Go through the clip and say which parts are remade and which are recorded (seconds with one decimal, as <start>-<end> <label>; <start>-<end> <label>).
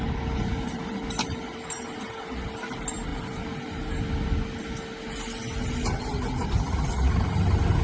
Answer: 0.0-7.8 recorded